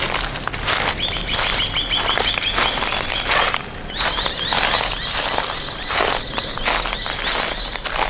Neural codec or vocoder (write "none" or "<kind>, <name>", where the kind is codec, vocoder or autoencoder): none